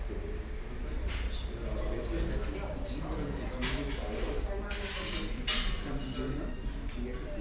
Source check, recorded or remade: recorded